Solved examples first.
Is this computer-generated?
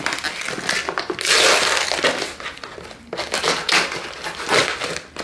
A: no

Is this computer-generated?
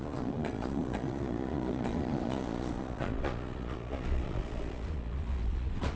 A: yes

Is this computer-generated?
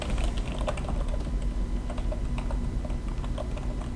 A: no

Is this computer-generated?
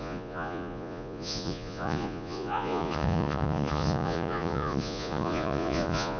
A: yes